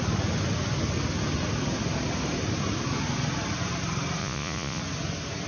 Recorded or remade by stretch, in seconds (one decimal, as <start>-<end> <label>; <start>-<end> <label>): 0.0-4.2 recorded; 4.2-4.8 remade; 4.8-5.5 recorded